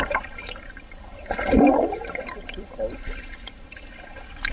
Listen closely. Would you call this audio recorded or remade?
remade